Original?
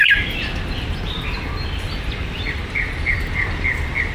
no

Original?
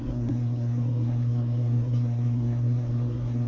no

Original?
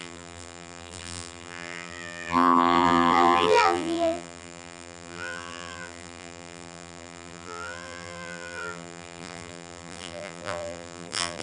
no